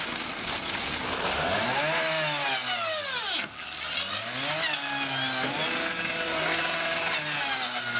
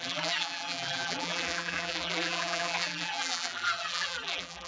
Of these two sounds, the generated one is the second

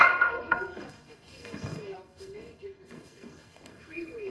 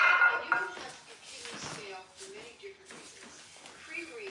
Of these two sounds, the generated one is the first